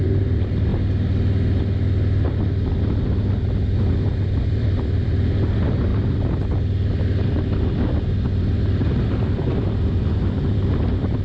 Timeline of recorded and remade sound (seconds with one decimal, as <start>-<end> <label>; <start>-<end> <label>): 0.0-0.7 remade; 0.7-3.9 recorded; 3.9-5.9 remade; 5.9-7.3 recorded; 7.3-11.2 remade